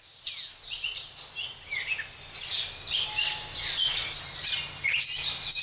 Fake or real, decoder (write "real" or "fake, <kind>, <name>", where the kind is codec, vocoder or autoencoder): real